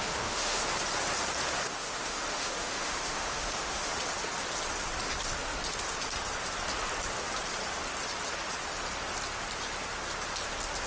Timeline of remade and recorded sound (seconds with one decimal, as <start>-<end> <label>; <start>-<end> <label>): 0.0-0.6 remade; 0.6-1.7 recorded; 1.7-3.9 remade; 3.9-10.9 recorded